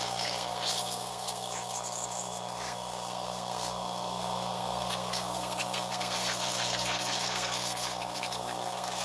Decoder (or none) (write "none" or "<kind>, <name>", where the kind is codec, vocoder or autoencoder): codec, SNAC